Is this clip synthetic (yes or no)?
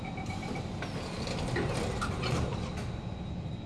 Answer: no